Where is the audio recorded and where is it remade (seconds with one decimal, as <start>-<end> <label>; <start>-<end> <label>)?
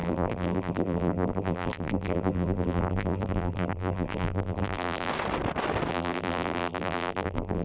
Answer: 0.0-5.1 remade; 5.1-5.9 recorded; 5.9-7.6 remade